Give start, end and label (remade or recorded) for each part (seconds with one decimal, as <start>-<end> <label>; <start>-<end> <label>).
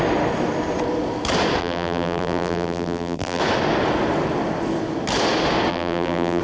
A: 0.0-1.6 recorded; 1.6-3.4 remade; 3.4-5.7 recorded; 5.7-6.4 remade